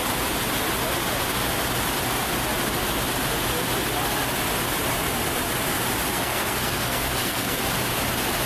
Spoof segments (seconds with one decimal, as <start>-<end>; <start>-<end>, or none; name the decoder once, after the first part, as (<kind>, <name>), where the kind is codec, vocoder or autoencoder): 6.1-7.6 (codec, SNAC)